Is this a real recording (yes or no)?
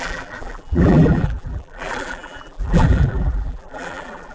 no